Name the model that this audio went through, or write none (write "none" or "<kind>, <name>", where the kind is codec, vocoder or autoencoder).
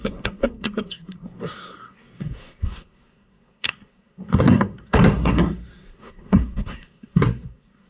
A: codec, SNAC